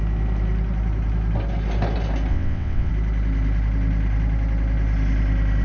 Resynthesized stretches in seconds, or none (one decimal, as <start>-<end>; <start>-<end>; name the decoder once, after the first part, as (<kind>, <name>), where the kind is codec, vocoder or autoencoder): 2.3-2.9 (vocoder, WaveNeXt)